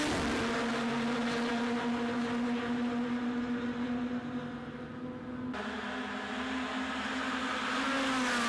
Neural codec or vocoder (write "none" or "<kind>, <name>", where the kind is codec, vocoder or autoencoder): none